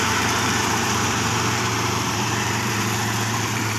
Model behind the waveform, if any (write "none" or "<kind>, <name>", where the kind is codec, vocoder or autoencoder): vocoder, BigVGAN v2